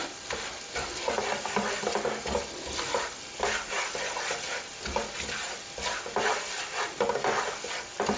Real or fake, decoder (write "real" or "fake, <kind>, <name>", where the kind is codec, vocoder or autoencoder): real